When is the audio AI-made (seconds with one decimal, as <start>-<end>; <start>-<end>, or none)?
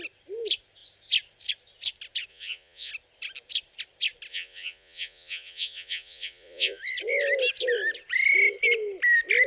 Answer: 2.3-2.9; 4.3-6.8